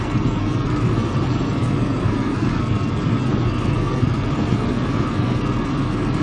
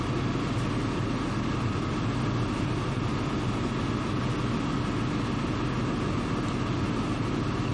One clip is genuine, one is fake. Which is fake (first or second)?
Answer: first